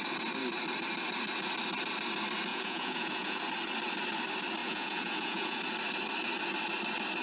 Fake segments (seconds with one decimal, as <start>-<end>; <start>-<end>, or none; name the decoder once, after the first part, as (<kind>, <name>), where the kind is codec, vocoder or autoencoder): 2.5-3.4 (vocoder, Vocos); 4.6-5.6